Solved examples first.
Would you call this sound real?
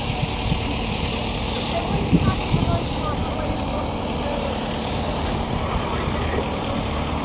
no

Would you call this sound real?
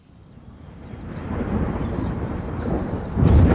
no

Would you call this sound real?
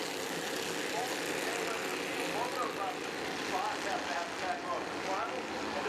yes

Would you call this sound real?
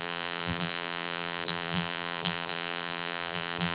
no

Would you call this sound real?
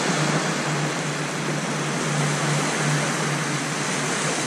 yes